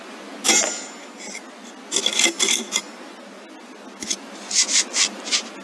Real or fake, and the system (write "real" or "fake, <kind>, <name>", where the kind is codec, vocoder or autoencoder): real